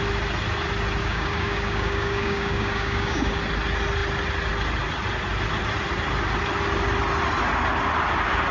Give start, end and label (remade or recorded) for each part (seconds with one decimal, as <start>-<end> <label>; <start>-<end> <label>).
0.0-1.0 recorded; 1.0-3.4 remade; 3.4-8.5 recorded